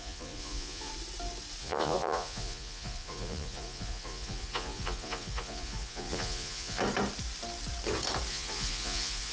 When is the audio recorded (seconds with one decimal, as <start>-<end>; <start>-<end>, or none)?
0.9-1.6; 6.8-8.3